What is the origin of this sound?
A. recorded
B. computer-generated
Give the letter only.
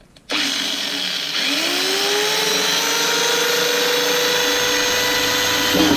A